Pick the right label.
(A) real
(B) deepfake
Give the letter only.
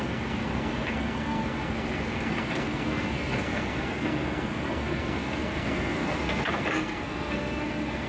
B